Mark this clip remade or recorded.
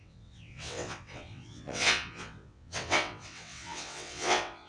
remade